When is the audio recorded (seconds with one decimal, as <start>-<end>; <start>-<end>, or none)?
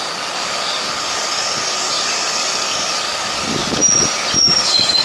3.6-4.4